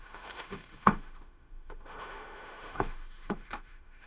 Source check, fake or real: fake